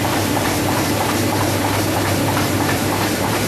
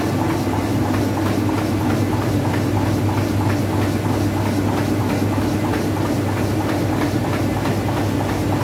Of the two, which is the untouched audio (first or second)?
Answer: second